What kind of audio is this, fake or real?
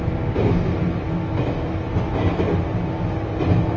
real